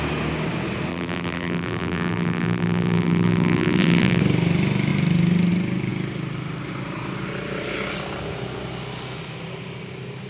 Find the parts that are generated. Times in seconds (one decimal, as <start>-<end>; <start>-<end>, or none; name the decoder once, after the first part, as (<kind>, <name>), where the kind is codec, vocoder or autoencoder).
0.9-4.2 (vocoder, BigVGAN v2)